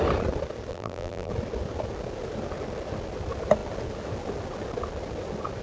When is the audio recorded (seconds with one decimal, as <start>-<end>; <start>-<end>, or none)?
0.0-0.7; 1.3-5.6